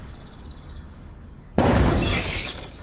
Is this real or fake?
fake